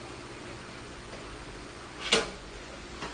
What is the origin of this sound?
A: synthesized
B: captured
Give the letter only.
A